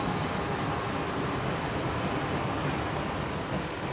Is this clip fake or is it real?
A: real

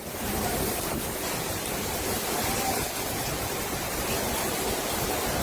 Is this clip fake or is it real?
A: fake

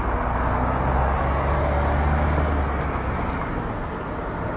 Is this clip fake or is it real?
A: real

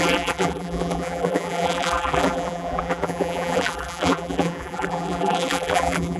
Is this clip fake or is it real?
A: fake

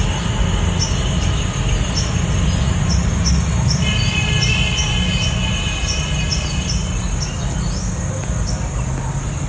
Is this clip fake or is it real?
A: real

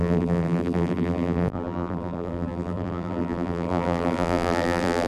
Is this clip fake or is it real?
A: fake